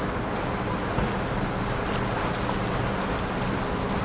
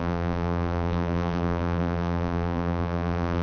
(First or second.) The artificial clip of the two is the second